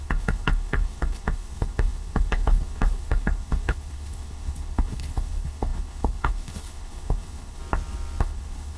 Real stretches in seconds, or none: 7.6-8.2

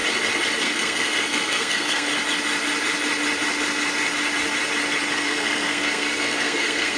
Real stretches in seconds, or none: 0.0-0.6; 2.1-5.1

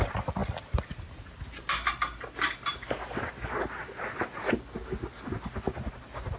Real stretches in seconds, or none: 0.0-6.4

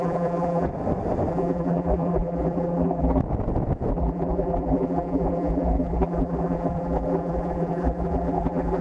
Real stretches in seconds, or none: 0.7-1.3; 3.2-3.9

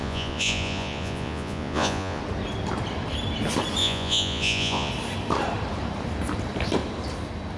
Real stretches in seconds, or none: 2.2-3.8; 4.9-7.6

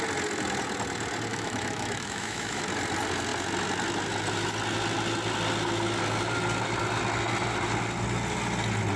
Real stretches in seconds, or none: 0.0-1.3; 2.6-9.0

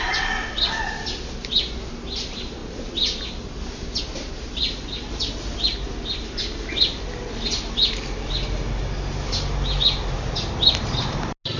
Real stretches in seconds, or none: 0.0-11.6